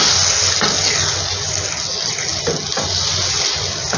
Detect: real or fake real